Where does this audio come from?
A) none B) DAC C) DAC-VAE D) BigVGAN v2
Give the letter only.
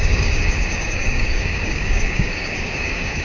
B